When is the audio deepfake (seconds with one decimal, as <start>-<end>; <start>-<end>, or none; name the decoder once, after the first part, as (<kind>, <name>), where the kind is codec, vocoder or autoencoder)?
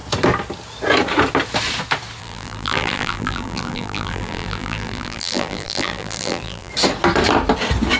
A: 2.2-6.7 (vocoder, BigVGAN v2)